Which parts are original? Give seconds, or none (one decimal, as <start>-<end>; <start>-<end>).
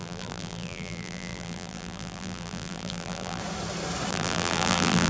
3.4-4.1